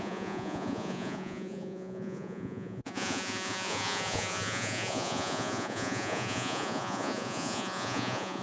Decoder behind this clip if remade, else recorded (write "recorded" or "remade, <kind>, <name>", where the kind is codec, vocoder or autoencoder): remade, vocoder, Vocos